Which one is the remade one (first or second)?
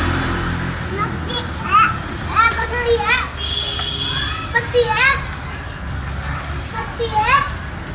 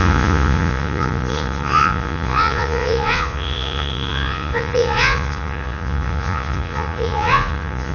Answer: second